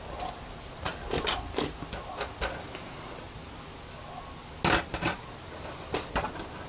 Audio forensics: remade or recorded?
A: recorded